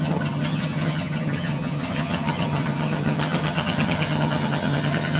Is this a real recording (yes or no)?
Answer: no